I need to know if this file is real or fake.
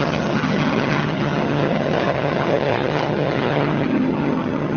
fake